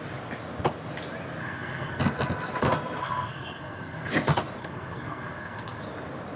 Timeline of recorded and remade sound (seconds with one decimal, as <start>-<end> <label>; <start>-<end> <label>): 0.0-1.4 recorded; 1.4-2.0 remade; 2.0-3.0 recorded; 3.0-4.1 remade; 4.1-4.6 recorded; 4.6-5.8 remade; 5.8-6.4 recorded